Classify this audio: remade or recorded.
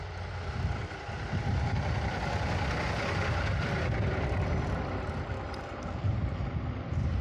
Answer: recorded